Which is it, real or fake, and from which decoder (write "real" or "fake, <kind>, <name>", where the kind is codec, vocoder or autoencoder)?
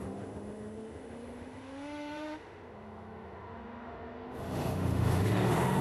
fake, autoencoder, DAC-VAE